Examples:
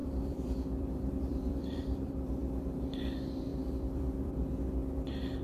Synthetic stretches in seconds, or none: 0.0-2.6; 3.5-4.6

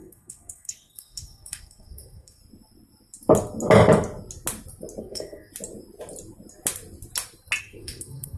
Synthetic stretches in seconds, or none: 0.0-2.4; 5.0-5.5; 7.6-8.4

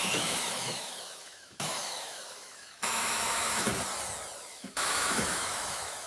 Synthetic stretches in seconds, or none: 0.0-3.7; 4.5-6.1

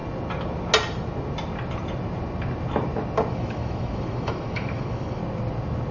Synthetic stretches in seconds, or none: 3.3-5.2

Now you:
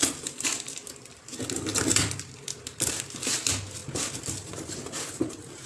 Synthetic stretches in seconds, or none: none

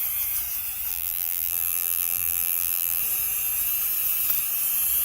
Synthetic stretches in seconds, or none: 0.9-3.0

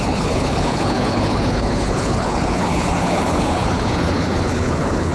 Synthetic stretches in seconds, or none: 0.0-5.1